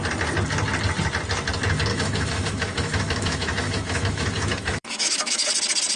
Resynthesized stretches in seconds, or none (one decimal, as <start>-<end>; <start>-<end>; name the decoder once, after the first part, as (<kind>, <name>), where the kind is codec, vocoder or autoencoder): 1.9-5.5 (autoencoder, DAC-VAE)